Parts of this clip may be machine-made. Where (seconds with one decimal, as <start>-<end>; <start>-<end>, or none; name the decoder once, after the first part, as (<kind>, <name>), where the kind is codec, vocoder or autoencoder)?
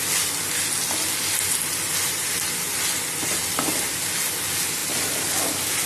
none